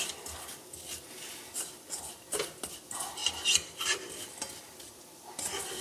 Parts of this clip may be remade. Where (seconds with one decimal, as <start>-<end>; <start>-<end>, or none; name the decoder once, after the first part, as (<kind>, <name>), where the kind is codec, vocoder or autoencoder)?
none